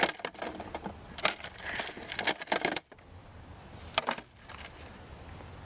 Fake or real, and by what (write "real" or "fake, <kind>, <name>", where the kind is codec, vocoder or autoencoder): real